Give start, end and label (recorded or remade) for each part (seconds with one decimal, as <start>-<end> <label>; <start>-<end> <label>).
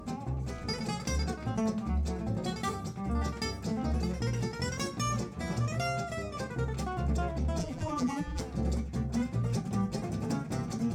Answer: 0.0-7.6 recorded; 7.6-8.4 remade; 8.4-10.9 recorded